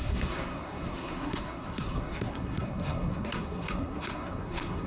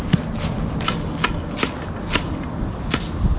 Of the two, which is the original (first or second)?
second